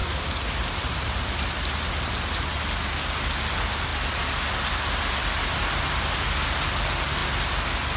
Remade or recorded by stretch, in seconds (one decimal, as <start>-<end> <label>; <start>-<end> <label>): 0.0-1.9 remade; 1.9-3.9 recorded; 3.9-6.1 remade; 6.1-8.0 recorded